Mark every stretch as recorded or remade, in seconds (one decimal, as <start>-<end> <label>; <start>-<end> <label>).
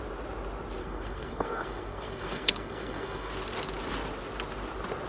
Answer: 0.0-0.8 recorded; 0.8-3.3 remade; 3.3-5.1 recorded